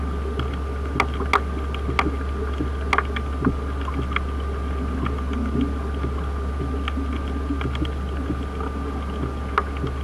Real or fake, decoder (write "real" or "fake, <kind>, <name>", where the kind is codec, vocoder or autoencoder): real